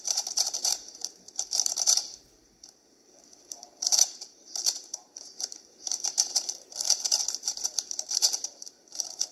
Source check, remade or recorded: remade